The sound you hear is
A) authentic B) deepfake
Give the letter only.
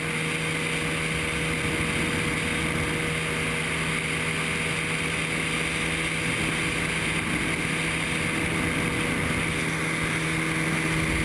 A